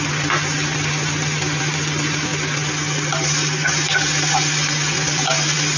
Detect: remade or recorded recorded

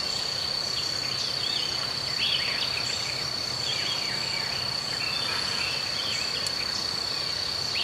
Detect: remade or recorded recorded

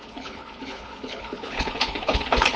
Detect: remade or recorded remade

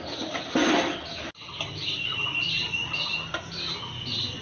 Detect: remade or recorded recorded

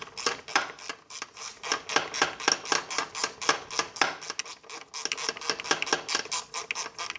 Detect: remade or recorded recorded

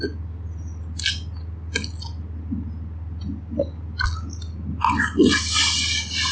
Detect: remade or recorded recorded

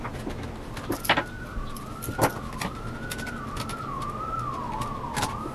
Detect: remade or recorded recorded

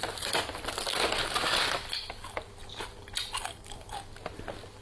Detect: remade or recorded recorded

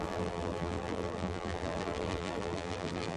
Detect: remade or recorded remade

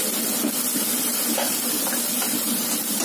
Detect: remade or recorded recorded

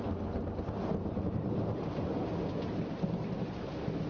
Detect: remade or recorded recorded